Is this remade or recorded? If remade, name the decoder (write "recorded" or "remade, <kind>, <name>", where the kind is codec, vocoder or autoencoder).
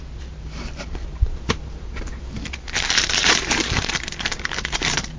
remade, vocoder, BigVGAN v2